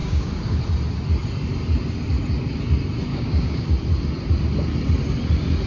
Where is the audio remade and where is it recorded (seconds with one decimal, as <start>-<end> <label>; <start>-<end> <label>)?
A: 0.0-0.6 remade; 0.6-3.1 recorded; 3.1-3.7 remade; 3.7-5.7 recorded